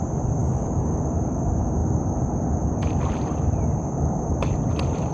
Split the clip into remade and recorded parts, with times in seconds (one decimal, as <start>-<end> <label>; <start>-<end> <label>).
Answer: 0.0-0.4 recorded; 0.4-1.0 remade; 1.0-5.1 recorded